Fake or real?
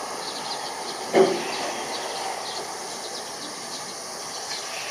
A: real